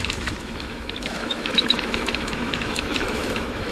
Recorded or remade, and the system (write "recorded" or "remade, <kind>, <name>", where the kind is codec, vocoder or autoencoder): remade, autoencoder, DAC-VAE